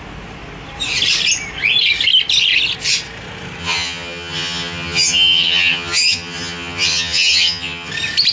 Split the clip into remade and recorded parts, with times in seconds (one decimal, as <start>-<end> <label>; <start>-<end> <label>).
0.0-3.6 recorded; 3.6-7.9 remade; 7.9-8.3 recorded